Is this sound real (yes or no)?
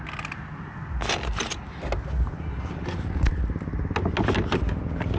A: yes